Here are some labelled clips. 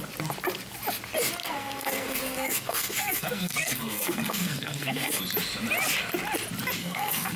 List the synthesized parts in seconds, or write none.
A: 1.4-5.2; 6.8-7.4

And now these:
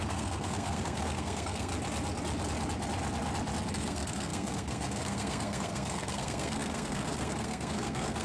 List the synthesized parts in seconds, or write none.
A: 0.0-1.7; 3.7-8.2

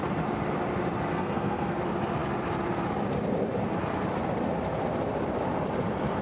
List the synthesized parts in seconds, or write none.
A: 1.1-1.8

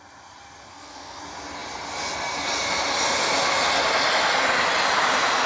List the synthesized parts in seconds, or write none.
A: 0.7-1.2

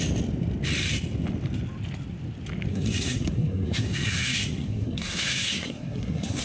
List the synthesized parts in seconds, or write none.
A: 2.7-6.4

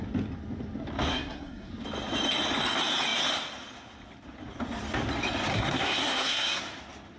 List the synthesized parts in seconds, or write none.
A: 1.1-1.7; 5.5-6.6

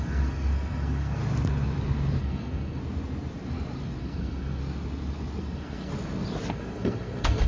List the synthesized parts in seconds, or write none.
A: 0.0-1.2; 2.2-2.8; 4.0-4.6; 5.4-5.9; 6.5-7.5